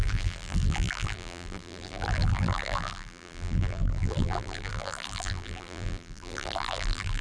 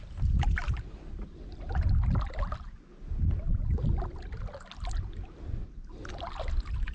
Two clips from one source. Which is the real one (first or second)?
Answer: second